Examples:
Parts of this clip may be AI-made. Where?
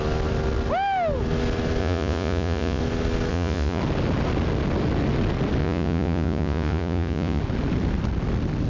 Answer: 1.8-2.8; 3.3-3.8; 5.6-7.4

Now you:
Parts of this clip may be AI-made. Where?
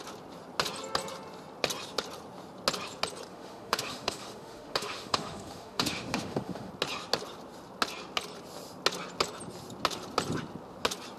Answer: 3.3-6.7